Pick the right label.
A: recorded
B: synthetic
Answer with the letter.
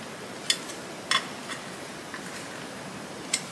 A